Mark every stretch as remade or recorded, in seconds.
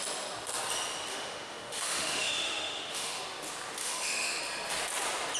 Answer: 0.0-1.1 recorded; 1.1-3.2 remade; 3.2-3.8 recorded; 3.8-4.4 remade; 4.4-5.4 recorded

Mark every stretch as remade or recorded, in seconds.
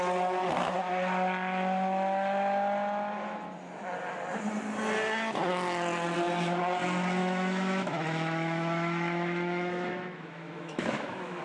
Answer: 0.0-7.2 recorded; 7.2-11.4 remade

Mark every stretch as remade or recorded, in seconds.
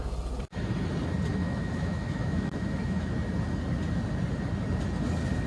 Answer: 0.0-1.3 recorded; 1.3-3.2 remade; 3.2-5.5 recorded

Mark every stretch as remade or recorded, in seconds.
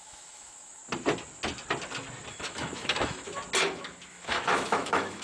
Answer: 0.0-0.8 remade; 0.8-2.3 recorded; 2.3-3.4 remade; 3.4-4.1 recorded; 4.1-5.2 remade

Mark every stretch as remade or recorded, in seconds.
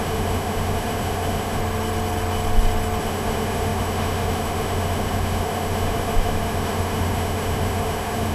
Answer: 0.0-1.6 remade; 1.6-3.0 recorded; 3.0-8.3 remade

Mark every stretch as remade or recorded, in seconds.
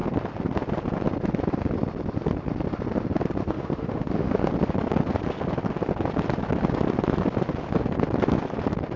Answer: 0.0-3.4 recorded; 3.4-4.5 remade; 4.5-9.0 recorded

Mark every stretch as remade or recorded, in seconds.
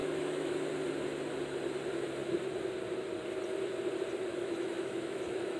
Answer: 0.0-0.7 remade; 0.7-4.3 recorded; 4.3-5.6 remade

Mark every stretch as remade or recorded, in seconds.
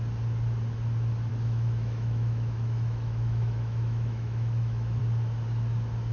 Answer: 0.0-1.3 recorded; 1.3-5.0 remade; 5.0-6.1 recorded